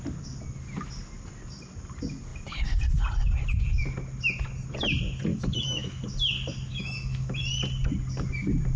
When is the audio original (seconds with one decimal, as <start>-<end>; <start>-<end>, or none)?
0.0-5.3; 6.0-6.7; 7.4-8.8

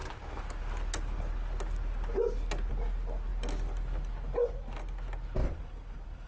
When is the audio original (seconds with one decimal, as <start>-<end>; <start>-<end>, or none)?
0.0-5.4

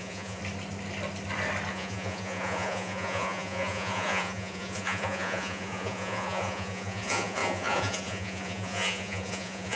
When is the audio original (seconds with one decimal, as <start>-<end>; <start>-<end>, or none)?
0.4-1.7

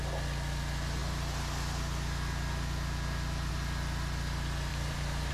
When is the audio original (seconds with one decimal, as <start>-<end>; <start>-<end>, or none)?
0.0-4.7

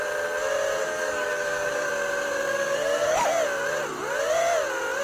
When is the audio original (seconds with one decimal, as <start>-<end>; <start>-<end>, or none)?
0.0-0.8; 1.9-2.5; 3.2-5.0

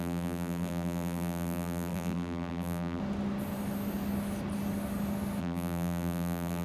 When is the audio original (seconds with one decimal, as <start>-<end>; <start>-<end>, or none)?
3.0-5.4

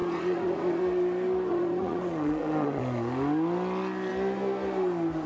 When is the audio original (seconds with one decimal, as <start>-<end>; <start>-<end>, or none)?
0.8-1.5; 2.8-5.3